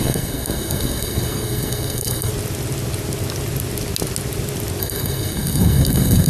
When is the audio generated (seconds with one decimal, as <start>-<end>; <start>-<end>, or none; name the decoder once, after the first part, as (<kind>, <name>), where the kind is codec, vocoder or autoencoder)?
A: 0.0-2.3 (codec, SNAC); 4.8-6.3